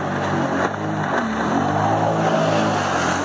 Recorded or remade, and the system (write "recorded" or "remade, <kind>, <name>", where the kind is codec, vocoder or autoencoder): recorded